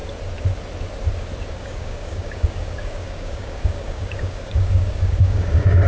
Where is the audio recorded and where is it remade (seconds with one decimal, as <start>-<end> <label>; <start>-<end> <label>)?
0.0-1.4 recorded; 1.4-5.9 remade